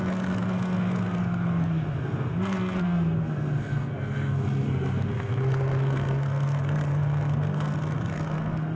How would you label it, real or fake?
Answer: fake